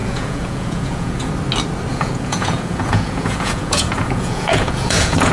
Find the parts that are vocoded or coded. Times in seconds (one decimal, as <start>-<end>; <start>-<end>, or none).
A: 0.0-1.3; 1.9-5.3